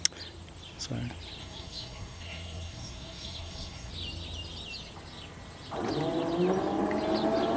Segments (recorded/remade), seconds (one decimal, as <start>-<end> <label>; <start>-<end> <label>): 0.0-1.4 recorded; 1.4-3.9 remade; 3.9-7.6 recorded